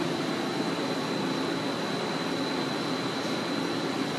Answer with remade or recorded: recorded